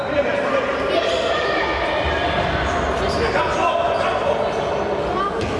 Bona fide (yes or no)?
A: yes